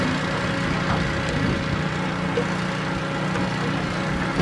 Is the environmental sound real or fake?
real